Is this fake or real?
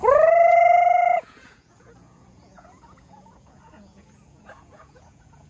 fake